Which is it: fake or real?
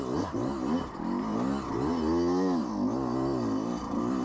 real